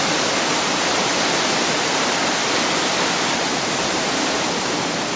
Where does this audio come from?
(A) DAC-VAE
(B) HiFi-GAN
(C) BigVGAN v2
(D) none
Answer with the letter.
D